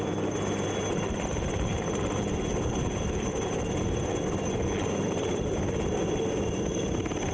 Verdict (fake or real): real